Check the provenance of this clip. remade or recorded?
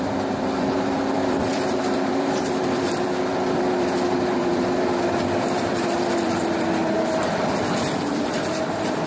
remade